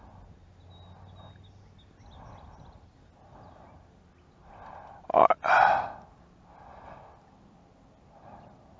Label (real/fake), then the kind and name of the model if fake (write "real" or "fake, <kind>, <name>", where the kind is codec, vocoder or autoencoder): real